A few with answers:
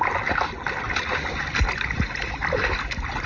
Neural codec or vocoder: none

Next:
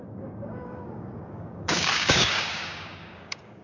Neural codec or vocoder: codec, DAC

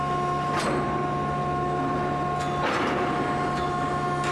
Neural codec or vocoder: none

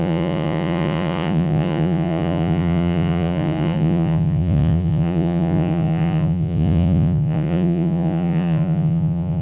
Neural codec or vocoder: vocoder, Vocos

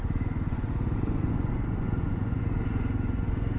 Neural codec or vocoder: vocoder, Vocos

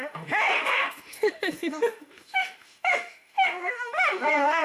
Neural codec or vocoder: autoencoder, DAC-VAE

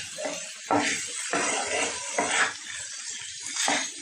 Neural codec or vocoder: none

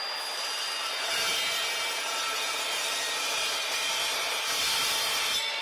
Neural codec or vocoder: none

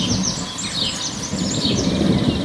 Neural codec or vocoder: none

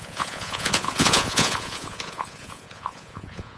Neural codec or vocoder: vocoder, Vocos